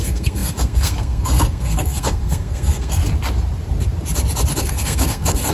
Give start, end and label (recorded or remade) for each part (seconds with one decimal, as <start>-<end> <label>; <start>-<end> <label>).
0.0-3.0 remade; 3.0-4.6 recorded; 4.6-5.5 remade